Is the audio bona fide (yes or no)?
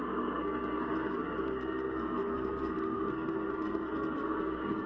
no